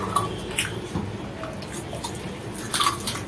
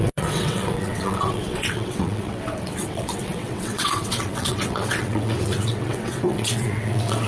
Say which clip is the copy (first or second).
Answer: second